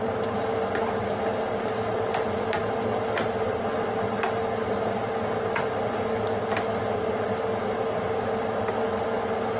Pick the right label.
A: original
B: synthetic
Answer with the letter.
A